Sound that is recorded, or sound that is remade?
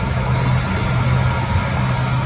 recorded